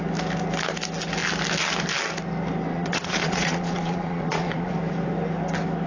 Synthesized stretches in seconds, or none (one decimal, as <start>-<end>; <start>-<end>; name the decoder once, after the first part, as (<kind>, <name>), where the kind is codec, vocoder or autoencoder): 2.7-4.7 (vocoder, Vocos)